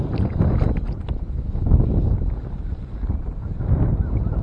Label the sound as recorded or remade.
recorded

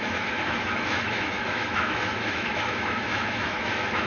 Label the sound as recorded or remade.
remade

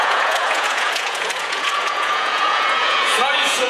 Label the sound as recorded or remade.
remade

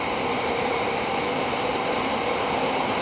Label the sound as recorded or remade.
recorded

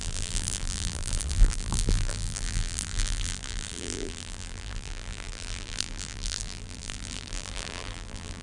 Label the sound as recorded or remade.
remade